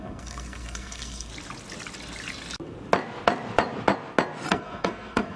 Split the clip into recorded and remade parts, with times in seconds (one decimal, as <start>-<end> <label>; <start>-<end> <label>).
0.0-1.3 remade; 1.3-4.5 recorded; 4.5-5.4 remade